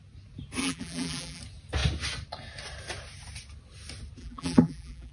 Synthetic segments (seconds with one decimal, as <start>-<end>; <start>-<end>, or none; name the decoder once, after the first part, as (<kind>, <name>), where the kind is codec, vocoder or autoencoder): 0.6-1.4 (vocoder, BigVGAN v2); 4.2-5.1